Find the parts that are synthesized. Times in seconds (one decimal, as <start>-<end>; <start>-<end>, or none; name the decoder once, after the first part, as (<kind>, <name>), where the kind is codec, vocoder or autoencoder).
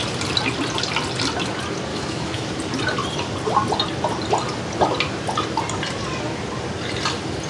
1.9-2.5 (autoencoder, DAC-VAE)